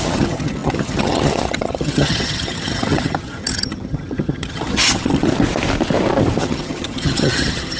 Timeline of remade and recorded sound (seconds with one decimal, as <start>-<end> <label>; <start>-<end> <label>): 0.0-5.3 remade; 5.3-6.4 recorded; 6.4-7.8 remade